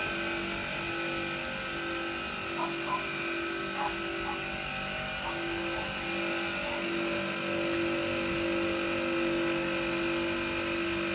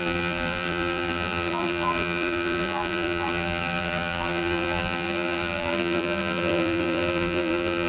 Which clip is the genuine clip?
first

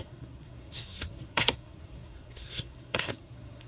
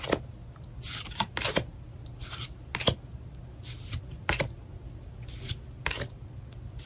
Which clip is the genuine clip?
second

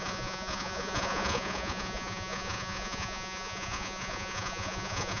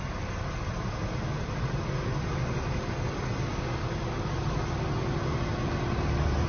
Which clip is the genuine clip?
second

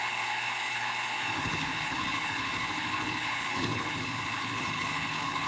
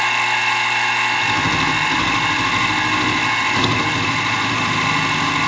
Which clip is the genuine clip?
second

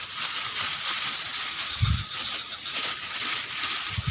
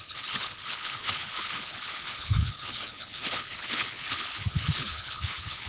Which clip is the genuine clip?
first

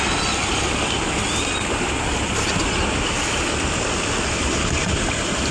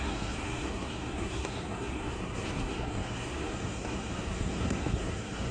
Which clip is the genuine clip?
first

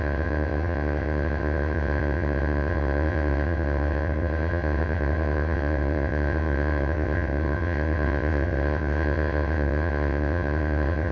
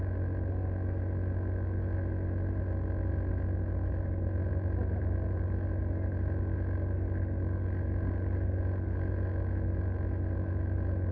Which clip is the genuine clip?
second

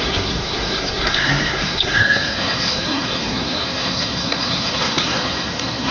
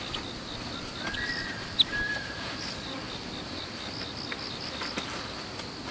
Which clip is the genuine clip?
second